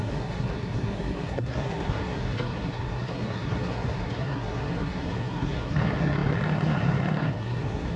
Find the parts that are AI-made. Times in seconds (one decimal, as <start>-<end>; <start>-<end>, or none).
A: 0.0-8.0